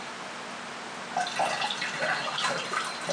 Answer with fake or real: real